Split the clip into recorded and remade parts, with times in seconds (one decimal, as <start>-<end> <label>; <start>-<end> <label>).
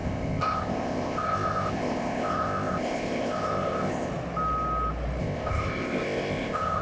0.0-4.1 remade; 4.1-5.2 recorded; 5.2-6.8 remade